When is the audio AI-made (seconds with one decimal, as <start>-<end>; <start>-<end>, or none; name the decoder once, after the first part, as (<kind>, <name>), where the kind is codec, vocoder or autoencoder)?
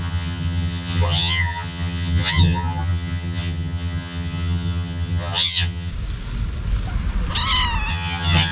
0.0-5.9 (vocoder, HiFi-GAN); 7.9-8.5